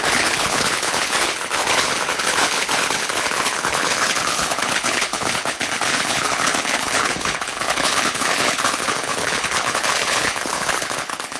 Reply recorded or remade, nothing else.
remade